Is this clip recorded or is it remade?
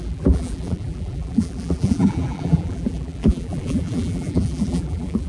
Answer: remade